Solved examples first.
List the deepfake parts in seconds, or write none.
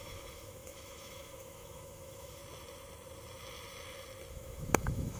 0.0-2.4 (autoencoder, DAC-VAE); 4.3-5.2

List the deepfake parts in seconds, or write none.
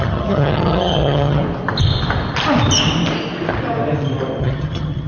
0.0-1.4 (vocoder, HiFi-GAN); 4.4-5.1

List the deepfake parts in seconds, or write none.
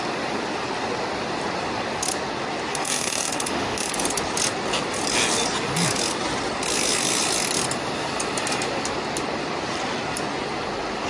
2.7-3.9 (autoencoder, DAC-VAE)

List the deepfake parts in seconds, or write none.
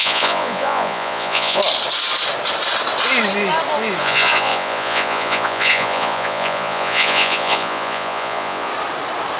0.0-1.6 (vocoder, Vocos); 4.0-8.7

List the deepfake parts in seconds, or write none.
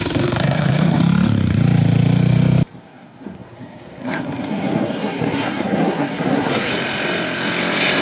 0.0-1.0 (codec, SNAC); 2.8-6.7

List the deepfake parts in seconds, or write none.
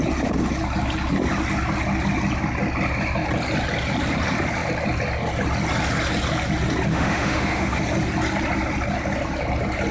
6.9-7.8 (autoencoder, DAC-VAE)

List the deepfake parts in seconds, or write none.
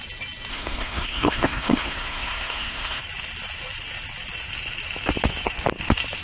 0.5-3.0 (codec, SNAC)